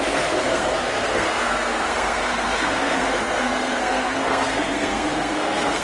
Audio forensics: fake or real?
fake